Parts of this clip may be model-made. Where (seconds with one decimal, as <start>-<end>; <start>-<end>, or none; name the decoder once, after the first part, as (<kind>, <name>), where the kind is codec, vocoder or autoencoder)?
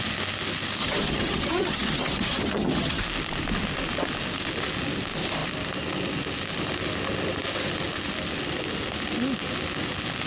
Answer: 0.8-3.0 (vocoder, HiFi-GAN)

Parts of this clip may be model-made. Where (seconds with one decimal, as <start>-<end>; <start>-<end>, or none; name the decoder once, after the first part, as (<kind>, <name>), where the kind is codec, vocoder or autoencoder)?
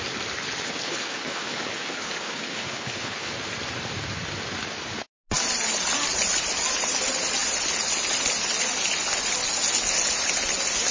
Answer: 0.8-3.3 (codec, HILCodec)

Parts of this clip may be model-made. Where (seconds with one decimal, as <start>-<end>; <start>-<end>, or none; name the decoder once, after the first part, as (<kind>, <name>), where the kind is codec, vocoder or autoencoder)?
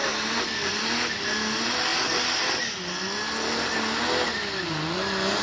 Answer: none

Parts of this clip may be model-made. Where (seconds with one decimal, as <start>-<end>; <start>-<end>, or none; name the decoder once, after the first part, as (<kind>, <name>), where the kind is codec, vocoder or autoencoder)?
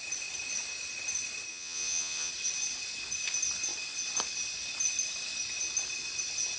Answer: 1.5-2.3 (vocoder, Vocos)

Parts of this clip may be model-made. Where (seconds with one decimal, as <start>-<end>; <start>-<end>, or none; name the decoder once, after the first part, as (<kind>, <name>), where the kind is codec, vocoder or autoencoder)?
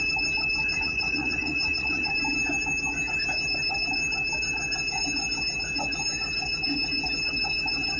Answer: 0.7-2.1 (vocoder, Vocos)